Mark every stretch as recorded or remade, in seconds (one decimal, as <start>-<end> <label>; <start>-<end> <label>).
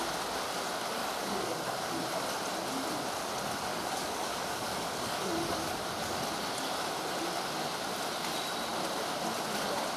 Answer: 0.0-1.0 recorded; 1.0-1.9 remade; 1.9-3.7 recorded; 3.7-6.2 remade; 6.2-10.0 recorded